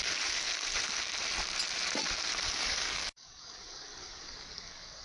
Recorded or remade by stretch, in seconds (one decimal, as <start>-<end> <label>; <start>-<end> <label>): 0.0-0.5 remade; 0.5-2.5 recorded; 2.5-5.0 remade

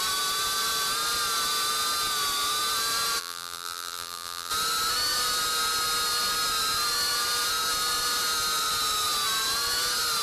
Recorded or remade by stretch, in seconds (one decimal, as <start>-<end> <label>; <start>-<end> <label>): 0.0-3.2 recorded; 3.2-4.5 remade; 4.5-10.2 recorded